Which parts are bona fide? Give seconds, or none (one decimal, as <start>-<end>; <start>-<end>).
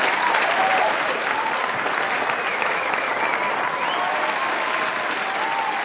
0.0-2.5; 3.1-5.8